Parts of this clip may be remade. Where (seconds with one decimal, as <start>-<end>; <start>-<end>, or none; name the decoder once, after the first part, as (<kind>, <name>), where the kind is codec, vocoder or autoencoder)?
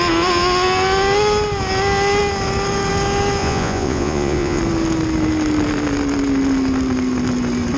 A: 3.4-4.6 (vocoder, Vocos)